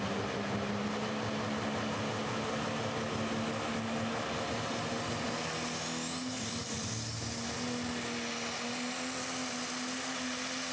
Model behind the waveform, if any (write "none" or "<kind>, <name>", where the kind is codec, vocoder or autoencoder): none